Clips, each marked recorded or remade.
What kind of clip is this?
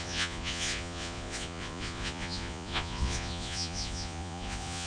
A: remade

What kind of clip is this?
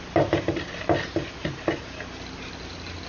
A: recorded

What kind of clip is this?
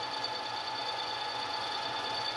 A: remade